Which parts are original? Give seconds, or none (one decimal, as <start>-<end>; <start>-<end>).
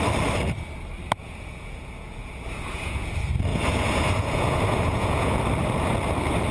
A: 0.0-1.2; 3.1-3.5; 5.4-6.5